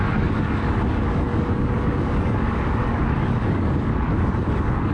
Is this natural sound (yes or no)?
no